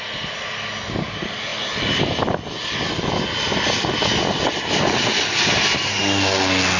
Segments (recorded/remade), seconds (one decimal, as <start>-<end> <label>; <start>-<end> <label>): 0.0-6.8 recorded